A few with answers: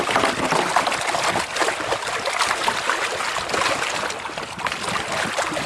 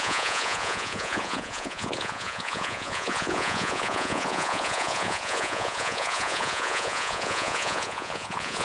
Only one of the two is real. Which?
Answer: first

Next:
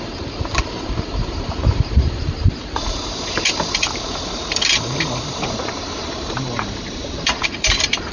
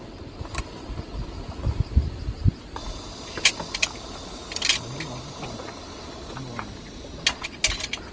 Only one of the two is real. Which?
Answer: second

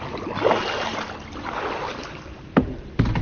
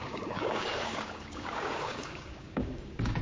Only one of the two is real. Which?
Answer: first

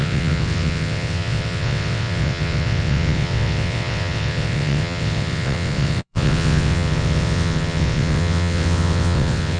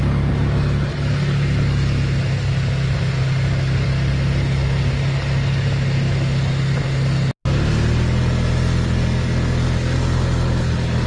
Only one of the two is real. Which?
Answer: second